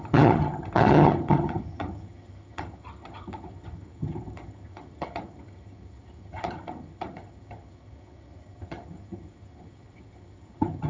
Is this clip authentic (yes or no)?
no